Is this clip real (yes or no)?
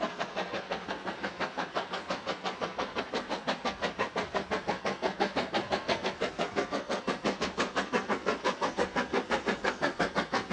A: no